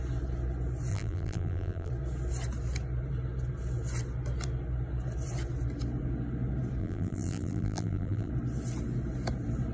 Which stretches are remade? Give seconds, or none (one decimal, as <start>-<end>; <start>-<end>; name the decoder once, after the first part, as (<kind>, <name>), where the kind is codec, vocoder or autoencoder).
0.9-1.9 (vocoder, BigVGAN v2); 6.8-8.3

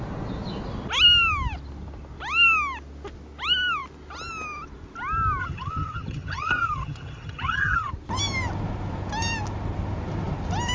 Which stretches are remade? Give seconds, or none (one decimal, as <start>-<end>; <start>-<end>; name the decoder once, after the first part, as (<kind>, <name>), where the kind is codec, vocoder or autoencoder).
5.4-7.9 (vocoder, HiFi-GAN)

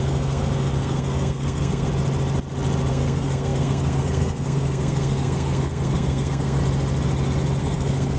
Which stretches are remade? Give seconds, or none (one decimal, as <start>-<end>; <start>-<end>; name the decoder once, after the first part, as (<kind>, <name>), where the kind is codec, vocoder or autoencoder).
0.0-1.9 (codec, SNAC); 2.9-6.6; 7.6-8.2

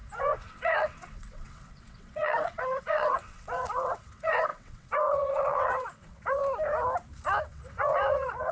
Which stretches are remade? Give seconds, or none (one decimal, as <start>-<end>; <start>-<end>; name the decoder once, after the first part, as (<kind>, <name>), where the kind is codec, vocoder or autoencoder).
0.0-6.4 (vocoder, WaveNeXt); 7.4-8.5

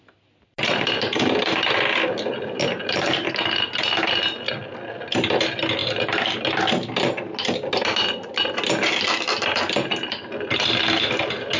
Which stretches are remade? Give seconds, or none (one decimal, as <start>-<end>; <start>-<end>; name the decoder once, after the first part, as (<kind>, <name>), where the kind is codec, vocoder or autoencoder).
none

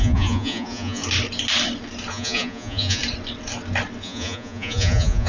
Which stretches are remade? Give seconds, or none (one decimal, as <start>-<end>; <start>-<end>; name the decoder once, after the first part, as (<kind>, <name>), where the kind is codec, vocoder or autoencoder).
0.0-1.0 (vocoder, Vocos); 2.1-3.0; 4.0-5.3

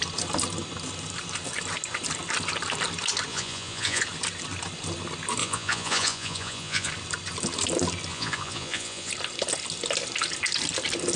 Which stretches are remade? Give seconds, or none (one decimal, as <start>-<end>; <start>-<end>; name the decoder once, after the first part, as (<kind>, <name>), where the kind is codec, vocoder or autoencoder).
3.3-4.0 (vocoder, Vocos); 5.4-6.9; 8.1-9.1

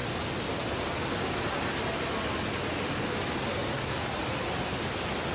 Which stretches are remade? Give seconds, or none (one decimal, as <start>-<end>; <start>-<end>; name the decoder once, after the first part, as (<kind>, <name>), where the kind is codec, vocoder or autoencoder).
none